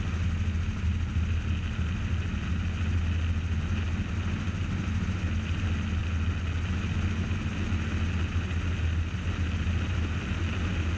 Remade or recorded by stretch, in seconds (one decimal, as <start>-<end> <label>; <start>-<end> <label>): 0.0-11.0 recorded